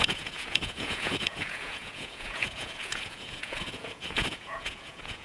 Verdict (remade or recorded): remade